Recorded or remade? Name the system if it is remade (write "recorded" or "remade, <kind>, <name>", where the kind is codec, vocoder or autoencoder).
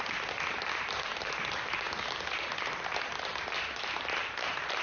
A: recorded